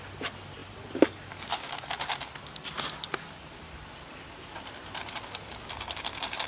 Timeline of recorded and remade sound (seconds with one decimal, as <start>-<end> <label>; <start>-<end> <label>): 0.0-6.5 recorded